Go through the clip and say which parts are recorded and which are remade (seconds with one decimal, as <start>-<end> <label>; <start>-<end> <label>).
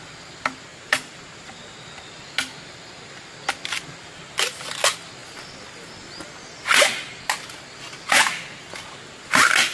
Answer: 0.0-0.7 recorded; 0.7-1.8 remade; 1.8-9.7 recorded